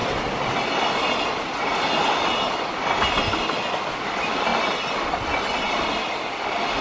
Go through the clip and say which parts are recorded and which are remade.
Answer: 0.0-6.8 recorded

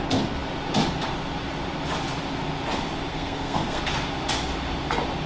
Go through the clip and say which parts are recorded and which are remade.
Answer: 0.0-3.1 recorded; 3.1-3.8 remade; 3.8-5.3 recorded

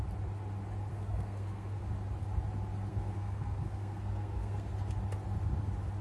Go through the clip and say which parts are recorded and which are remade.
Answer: 0.0-0.9 recorded; 0.9-1.8 remade; 1.8-2.9 recorded; 2.9-4.7 remade; 4.7-6.0 recorded

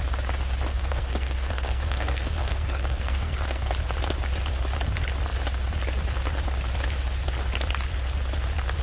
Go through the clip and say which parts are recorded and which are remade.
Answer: 0.0-0.7 recorded; 0.7-3.7 remade; 3.7-8.8 recorded

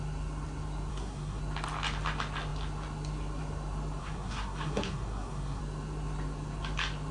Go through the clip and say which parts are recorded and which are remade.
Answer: 0.0-0.9 recorded; 0.9-1.4 remade; 1.4-4.0 recorded; 4.0-5.6 remade; 5.6-7.1 recorded

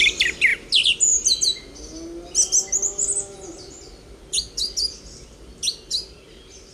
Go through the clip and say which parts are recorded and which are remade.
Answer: 0.0-6.7 recorded